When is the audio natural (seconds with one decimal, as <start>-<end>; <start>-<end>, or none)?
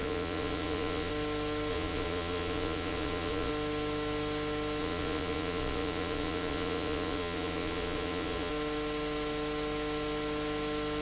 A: 1.1-1.7; 3.5-4.8; 8.5-11.0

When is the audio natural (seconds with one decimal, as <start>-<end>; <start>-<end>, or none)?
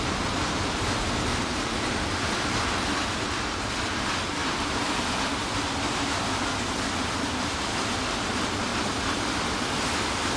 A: 0.0-1.3; 4.0-4.4; 5.0-8.7; 9.8-10.4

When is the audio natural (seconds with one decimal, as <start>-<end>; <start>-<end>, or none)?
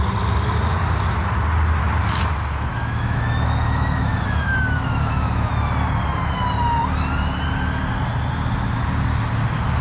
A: 0.0-2.7; 5.5-9.8